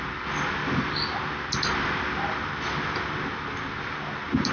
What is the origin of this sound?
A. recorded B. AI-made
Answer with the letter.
A